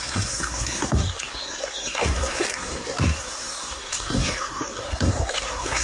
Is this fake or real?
fake